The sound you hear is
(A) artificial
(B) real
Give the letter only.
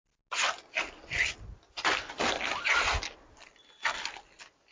B